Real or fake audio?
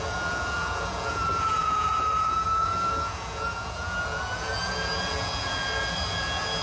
fake